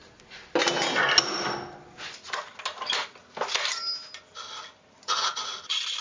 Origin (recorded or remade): recorded